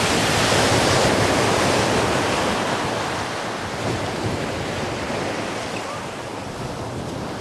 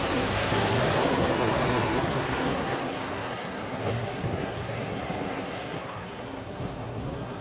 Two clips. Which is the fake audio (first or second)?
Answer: second